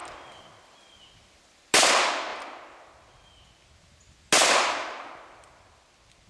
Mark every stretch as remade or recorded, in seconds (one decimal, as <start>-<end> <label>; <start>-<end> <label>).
0.0-6.3 recorded

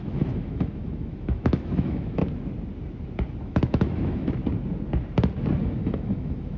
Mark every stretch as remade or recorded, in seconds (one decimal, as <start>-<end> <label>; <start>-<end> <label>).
0.0-2.2 remade; 2.2-3.4 recorded; 3.4-4.4 remade; 4.4-5.6 recorded; 5.6-6.6 remade

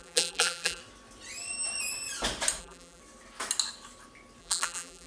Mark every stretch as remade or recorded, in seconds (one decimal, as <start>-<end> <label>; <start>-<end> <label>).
0.0-0.8 remade; 0.8-2.6 recorded; 2.6-3.0 remade; 3.0-4.4 recorded; 4.4-5.1 remade

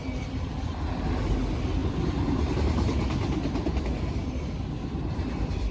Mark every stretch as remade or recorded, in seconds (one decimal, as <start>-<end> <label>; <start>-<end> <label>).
0.0-5.7 recorded

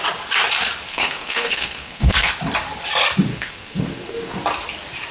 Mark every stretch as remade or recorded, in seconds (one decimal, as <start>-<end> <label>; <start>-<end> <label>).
0.0-0.9 recorded; 0.9-2.3 remade; 2.3-3.3 recorded; 3.3-4.4 remade; 4.4-5.1 recorded